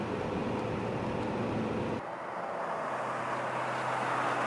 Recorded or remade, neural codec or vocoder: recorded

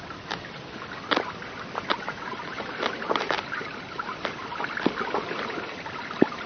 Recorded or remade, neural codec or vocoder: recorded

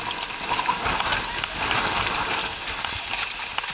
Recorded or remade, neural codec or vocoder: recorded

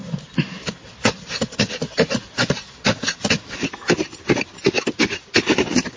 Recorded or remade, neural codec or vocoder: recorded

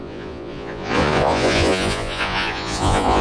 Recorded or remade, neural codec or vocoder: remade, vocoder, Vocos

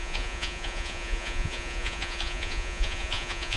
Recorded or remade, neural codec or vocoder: remade, vocoder, Vocos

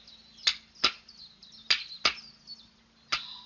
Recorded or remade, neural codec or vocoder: recorded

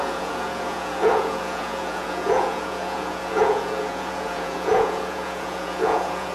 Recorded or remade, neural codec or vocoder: remade, vocoder, Vocos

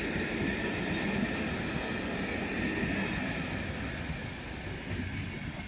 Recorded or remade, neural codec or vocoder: recorded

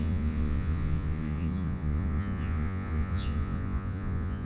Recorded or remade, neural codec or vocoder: remade, vocoder, Vocos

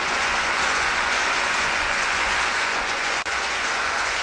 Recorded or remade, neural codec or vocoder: remade, vocoder, Vocos